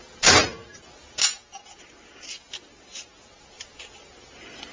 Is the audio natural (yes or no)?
yes